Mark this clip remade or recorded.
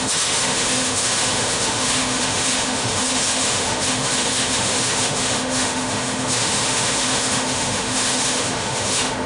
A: remade